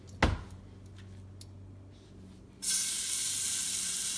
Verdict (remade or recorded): recorded